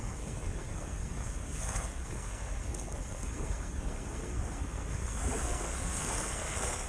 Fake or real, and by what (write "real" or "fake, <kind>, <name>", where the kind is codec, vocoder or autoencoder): fake, codec, SNAC